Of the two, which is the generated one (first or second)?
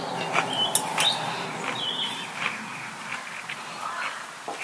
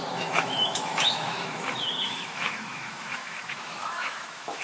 second